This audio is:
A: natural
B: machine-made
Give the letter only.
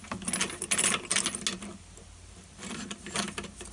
A